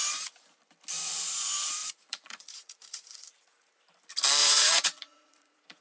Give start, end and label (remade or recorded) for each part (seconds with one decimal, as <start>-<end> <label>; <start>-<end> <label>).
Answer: 0.0-1.8 recorded; 1.8-3.8 remade; 3.8-4.4 recorded; 4.4-5.8 remade